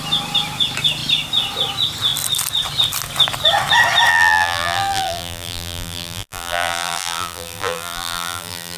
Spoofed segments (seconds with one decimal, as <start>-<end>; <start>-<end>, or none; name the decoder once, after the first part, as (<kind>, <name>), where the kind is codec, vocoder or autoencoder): 4.1-8.8 (vocoder, BigVGAN v2)